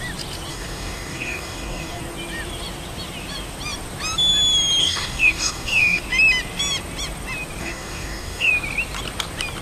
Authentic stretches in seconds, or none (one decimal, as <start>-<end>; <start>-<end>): 0.0-0.5; 2.0-4.8; 6.0-7.6; 8.5-9.6